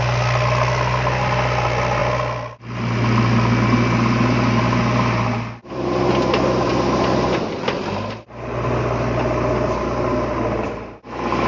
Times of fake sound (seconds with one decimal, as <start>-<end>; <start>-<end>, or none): none